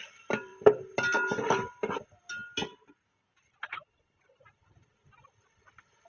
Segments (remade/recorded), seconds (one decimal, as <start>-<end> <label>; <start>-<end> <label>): 0.0-6.1 recorded